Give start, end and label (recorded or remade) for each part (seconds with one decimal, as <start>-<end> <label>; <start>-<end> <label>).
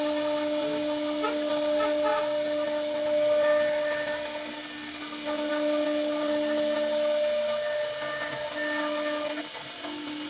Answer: 0.0-10.3 recorded